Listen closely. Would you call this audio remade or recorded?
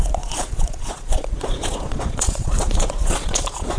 remade